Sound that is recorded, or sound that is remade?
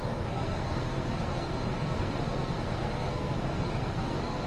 remade